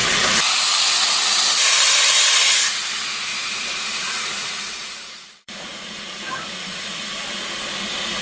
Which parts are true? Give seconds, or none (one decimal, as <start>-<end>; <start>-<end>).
0.0-3.3; 7.1-8.2